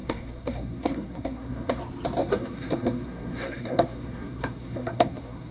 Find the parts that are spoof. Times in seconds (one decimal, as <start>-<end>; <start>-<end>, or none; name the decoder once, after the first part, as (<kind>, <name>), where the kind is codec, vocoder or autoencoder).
0.0-1.8 (codec, SNAC); 2.2-5.5